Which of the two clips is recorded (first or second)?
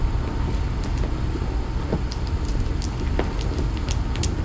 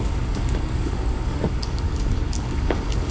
first